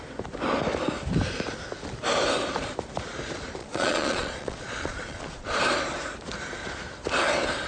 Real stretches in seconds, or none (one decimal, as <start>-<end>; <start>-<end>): 0.0-3.6; 5.6-7.7